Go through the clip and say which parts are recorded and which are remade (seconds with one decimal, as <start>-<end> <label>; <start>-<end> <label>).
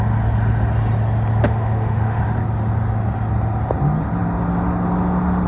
0.0-1.4 recorded; 1.4-2.2 remade; 2.2-5.5 recorded